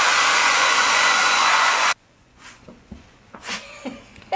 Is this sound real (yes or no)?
no